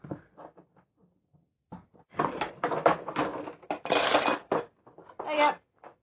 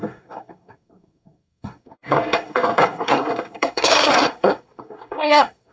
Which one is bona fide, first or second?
first